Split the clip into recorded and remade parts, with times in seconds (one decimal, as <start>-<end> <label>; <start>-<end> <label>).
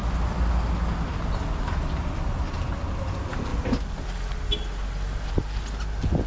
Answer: 0.0-6.3 recorded